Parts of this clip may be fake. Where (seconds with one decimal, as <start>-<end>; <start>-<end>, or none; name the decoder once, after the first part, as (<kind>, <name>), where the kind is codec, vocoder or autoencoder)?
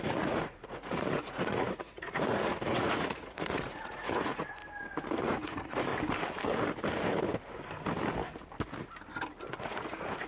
0.0-4.6 (vocoder, Vocos); 5.2-5.9; 9.6-10.3